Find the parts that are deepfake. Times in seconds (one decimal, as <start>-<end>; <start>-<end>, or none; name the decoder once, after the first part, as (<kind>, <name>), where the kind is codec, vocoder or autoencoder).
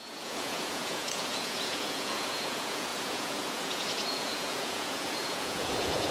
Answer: 0.0-6.1 (vocoder, Vocos)